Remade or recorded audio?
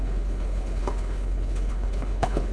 remade